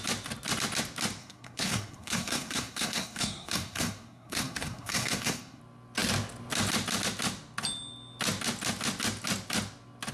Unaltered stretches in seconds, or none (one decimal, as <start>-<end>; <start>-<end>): 0.0-1.2; 5.6-10.1